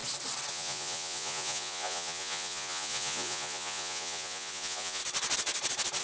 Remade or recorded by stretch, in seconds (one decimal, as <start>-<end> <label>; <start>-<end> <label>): 0.0-0.5 recorded; 0.5-5.0 remade; 5.0-6.0 recorded